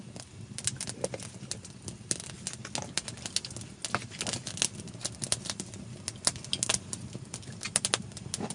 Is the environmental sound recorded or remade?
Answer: recorded